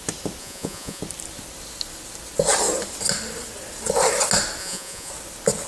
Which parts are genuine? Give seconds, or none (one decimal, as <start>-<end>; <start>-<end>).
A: 0.0-0.4; 1.0-4.6; 5.1-5.7